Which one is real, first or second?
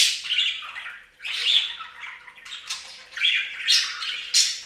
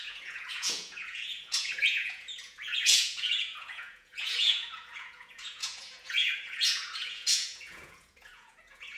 first